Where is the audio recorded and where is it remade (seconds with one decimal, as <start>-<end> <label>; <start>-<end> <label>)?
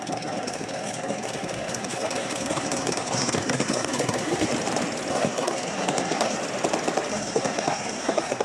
0.0-4.5 remade; 4.5-5.1 recorded; 5.1-6.4 remade; 6.4-7.1 recorded; 7.1-8.4 remade